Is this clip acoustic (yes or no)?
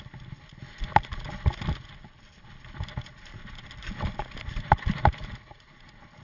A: yes